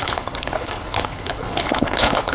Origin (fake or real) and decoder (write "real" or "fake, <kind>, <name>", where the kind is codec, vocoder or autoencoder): fake, codec, HILCodec